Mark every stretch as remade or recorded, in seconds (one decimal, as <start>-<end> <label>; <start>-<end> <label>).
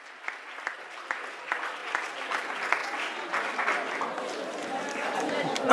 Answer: 0.0-5.7 recorded